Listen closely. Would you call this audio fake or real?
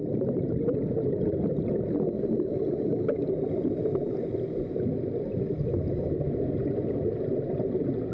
real